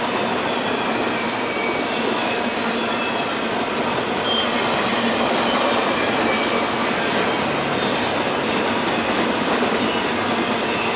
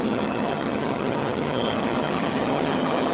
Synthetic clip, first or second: second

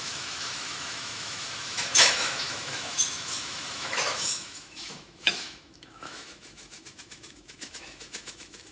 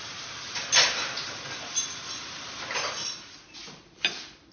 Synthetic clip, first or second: first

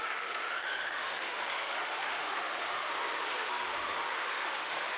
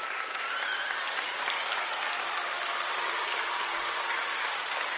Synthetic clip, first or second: first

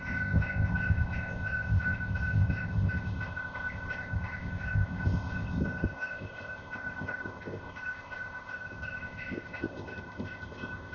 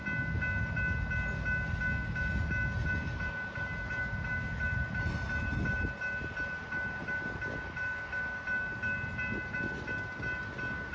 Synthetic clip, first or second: first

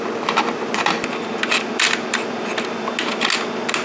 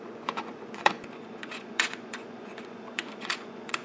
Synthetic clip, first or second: second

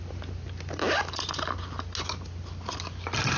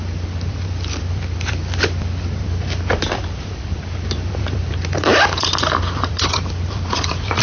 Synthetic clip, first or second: second